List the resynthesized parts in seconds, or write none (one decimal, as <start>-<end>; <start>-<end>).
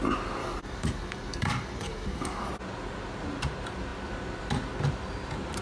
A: 0.4-2.5